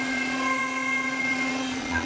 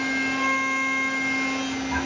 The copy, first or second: first